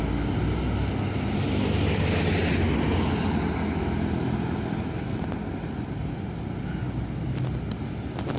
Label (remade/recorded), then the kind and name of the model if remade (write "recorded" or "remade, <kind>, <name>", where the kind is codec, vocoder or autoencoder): recorded